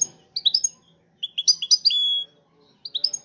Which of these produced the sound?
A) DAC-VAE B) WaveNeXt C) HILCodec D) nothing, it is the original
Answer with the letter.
D